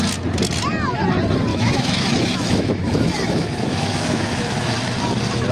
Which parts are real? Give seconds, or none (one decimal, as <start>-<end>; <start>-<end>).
0.0-1.5; 4.8-5.5